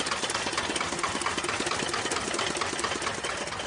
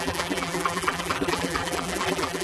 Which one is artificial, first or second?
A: second